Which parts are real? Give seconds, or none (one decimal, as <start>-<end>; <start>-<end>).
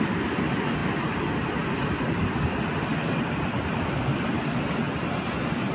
0.0-5.7